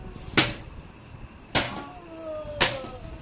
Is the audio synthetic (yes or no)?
no